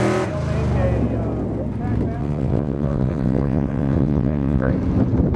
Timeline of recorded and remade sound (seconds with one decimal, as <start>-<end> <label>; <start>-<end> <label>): 0.0-2.2 recorded; 2.2-4.7 remade; 4.7-5.4 recorded